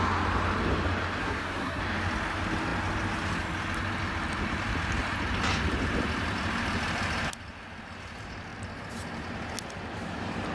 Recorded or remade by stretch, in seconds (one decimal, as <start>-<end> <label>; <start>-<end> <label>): 0.0-1.2 recorded; 1.2-1.8 remade; 1.8-10.5 recorded